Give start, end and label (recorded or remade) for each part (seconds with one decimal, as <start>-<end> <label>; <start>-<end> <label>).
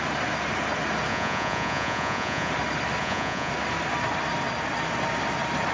0.0-1.1 recorded; 1.1-2.5 remade; 2.5-3.0 recorded; 3.0-3.5 remade; 3.5-5.7 recorded